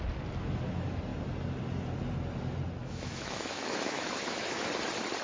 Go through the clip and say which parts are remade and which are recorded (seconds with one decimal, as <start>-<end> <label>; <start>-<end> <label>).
0.0-2.8 recorded; 2.8-4.7 remade; 4.7-5.2 recorded